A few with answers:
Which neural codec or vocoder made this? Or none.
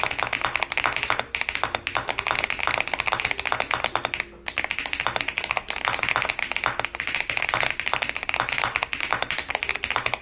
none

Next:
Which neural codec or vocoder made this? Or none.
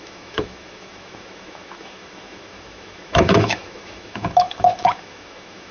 autoencoder, DAC-VAE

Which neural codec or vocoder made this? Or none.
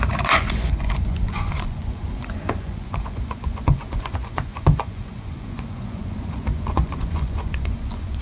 vocoder, Vocos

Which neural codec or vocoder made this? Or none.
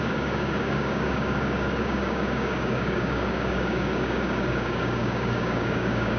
codec, DAC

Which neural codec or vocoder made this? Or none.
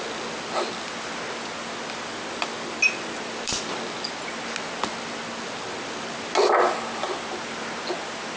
none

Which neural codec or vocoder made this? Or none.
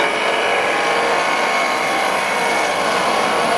none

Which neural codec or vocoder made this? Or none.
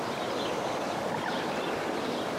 none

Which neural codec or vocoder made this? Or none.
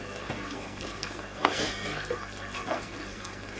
codec, SNAC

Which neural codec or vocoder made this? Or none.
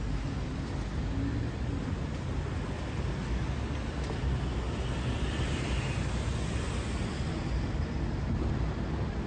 none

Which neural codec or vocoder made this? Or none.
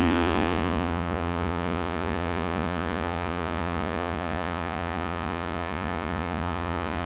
vocoder, Vocos